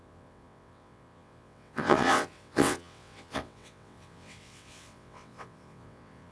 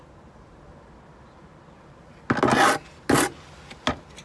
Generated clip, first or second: first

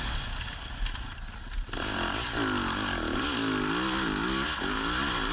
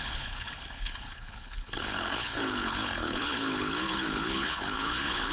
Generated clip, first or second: second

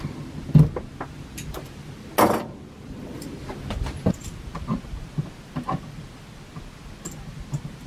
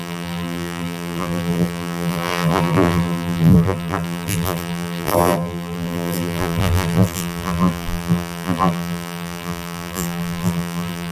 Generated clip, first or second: second